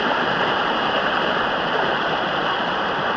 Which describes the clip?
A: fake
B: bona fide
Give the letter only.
A